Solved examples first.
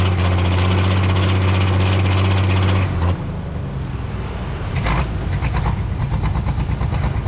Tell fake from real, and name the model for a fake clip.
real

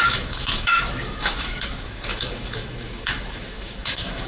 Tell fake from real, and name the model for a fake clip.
fake, autoencoder, DAC-VAE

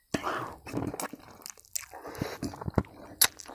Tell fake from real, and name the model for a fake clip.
real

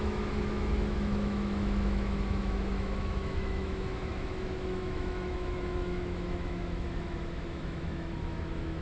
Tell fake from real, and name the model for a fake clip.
fake, autoencoder, DAC-VAE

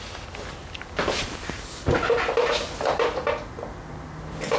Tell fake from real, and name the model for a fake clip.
real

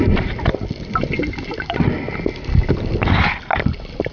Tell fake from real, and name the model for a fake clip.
real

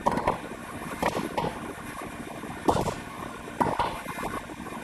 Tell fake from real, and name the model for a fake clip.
real